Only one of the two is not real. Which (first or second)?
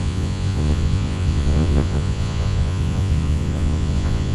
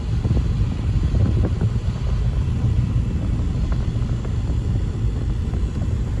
first